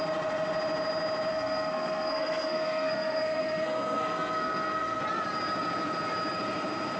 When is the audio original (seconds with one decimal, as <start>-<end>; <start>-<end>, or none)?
0.0-1.3; 5.0-7.0